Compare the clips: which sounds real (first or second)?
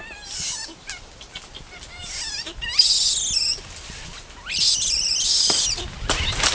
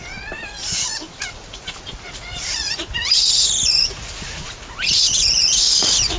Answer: first